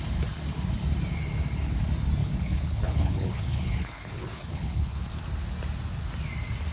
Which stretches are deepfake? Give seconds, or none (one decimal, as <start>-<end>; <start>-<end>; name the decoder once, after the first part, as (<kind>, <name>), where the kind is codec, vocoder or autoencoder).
2.2-5.1 (codec, HILCodec)